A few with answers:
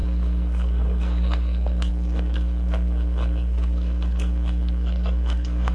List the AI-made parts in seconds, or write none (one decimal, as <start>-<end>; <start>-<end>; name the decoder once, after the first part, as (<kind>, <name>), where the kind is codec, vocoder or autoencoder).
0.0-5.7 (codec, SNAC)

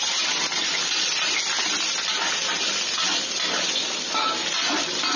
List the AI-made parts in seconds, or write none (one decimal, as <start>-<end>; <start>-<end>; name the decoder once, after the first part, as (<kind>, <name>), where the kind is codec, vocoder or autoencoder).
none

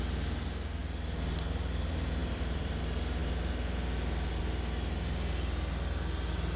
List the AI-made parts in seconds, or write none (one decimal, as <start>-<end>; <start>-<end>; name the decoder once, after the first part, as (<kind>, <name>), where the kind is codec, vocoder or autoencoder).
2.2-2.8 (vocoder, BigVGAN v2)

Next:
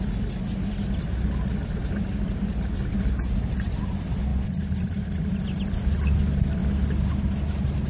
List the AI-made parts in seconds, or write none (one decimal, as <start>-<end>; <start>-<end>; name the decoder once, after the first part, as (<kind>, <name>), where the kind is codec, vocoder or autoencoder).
4.3-5.3 (vocoder, BigVGAN v2); 6.6-7.9

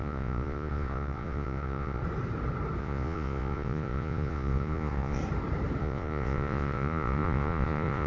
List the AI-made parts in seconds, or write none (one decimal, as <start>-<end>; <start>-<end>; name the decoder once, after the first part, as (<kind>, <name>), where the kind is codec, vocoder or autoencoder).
0.0-2.0 (vocoder, Vocos); 2.8-5.2; 5.8-8.1

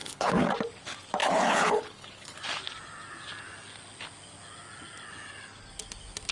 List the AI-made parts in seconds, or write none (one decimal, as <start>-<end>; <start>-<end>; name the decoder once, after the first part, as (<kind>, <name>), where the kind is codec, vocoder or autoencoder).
0.0-0.5 (codec, HILCodec); 1.2-2.4

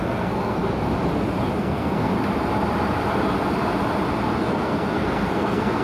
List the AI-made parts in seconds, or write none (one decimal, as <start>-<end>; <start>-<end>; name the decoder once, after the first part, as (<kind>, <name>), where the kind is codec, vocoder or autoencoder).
0.0-0.6 (codec, SNAC); 1.6-2.1; 4.4-5.8